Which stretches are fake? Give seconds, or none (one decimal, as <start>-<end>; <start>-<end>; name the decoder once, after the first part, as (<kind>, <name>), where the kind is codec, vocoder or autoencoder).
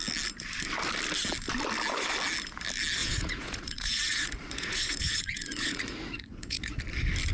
3.0-6.8 (vocoder, Vocos)